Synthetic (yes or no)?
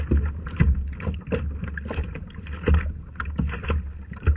no